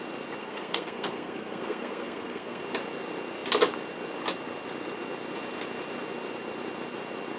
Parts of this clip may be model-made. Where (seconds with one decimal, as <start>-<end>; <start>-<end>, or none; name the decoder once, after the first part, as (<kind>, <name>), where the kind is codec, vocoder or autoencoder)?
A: 0.4-2.6 (codec, SNAC)